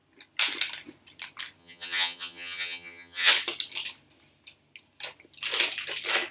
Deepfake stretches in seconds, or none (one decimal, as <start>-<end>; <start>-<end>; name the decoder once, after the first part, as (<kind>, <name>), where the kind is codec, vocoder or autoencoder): 1.6-3.3 (vocoder, HiFi-GAN)